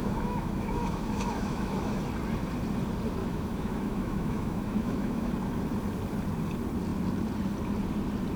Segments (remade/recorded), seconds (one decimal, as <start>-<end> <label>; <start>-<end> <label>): 0.0-2.0 remade; 2.0-3.2 recorded; 3.2-5.3 remade; 5.3-8.4 recorded